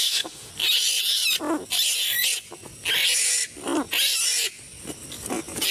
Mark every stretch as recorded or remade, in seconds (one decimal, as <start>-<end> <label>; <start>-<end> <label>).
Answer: 0.0-0.5 remade; 0.5-5.7 recorded